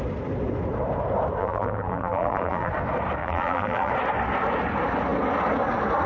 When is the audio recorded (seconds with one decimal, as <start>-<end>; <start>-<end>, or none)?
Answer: 0.0-1.4; 2.7-3.2; 3.9-6.1